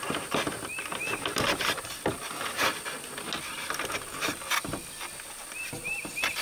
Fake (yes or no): no